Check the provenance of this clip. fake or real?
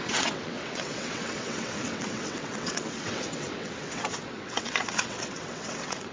fake